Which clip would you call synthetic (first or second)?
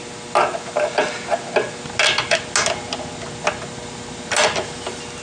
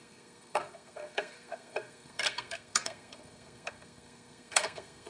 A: second